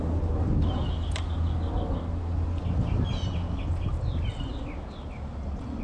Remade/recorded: recorded